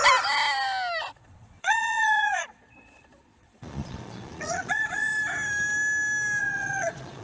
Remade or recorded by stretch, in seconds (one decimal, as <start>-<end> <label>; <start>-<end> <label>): 0.0-1.0 recorded; 1.0-5.1 remade; 5.1-6.4 recorded; 6.4-7.2 remade